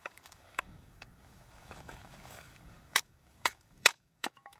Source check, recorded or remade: remade